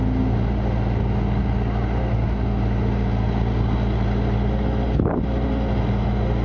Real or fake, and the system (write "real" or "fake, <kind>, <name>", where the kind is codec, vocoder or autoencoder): real